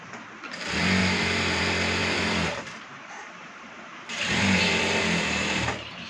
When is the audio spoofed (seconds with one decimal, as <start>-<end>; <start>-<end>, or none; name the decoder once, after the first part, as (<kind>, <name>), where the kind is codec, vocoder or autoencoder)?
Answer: 1.0-1.6 (vocoder, BigVGAN v2); 2.0-6.1